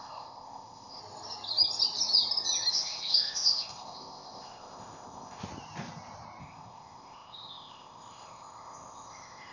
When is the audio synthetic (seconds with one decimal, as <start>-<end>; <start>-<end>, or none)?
0.0-1.0; 2.7-5.4; 6.4-9.5